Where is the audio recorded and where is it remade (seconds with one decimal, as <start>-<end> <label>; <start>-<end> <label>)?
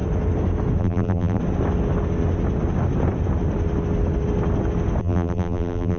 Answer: 0.0-0.8 recorded; 0.8-1.4 remade; 1.4-5.0 recorded; 5.0-6.0 remade